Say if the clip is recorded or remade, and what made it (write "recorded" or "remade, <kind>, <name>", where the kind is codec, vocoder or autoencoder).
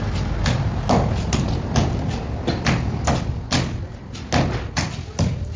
recorded